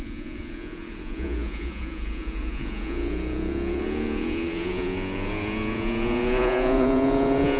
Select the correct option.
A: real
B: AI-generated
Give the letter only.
B